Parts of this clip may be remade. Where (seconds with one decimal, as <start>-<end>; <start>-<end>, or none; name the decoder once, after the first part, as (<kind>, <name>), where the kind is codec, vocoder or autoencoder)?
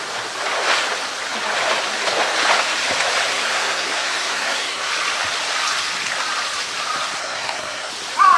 3.3-4.9 (codec, SNAC); 7.2-7.9